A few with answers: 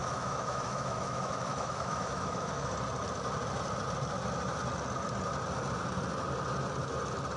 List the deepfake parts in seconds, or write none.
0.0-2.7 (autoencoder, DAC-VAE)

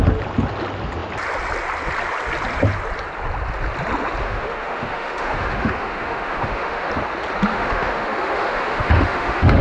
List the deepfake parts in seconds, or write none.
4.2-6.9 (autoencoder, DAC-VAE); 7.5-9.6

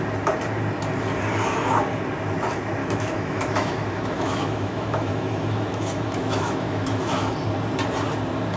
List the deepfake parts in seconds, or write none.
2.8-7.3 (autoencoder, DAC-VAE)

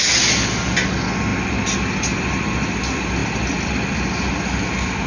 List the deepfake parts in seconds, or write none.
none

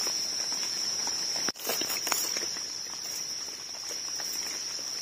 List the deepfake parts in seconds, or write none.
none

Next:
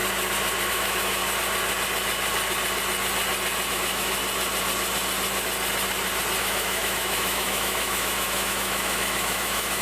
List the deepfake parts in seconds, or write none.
0.7-1.2 (autoencoder, DAC-VAE); 3.7-4.2; 6.4-9.8

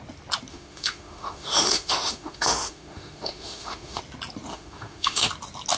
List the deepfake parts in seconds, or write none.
0.5-4.0 (autoencoder, DAC-VAE); 4.5-5.3